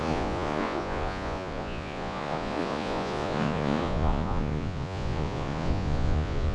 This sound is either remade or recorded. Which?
remade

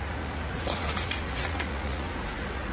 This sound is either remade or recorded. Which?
remade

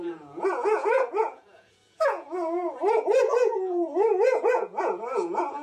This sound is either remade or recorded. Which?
remade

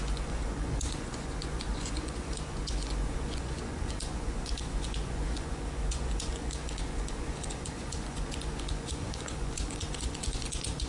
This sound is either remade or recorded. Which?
remade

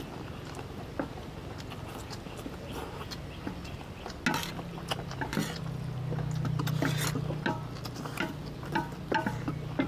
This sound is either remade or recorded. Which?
recorded